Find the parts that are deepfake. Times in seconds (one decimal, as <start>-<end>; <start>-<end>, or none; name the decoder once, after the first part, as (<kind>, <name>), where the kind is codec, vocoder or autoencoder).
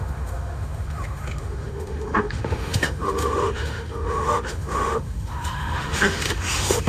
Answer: 0.0-6.9 (autoencoder, DAC-VAE)